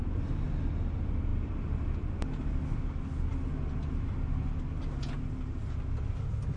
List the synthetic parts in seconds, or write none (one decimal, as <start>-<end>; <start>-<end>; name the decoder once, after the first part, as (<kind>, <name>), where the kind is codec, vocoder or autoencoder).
none